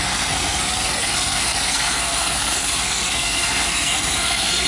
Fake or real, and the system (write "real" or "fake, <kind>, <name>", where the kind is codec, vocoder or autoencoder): fake, codec, SNAC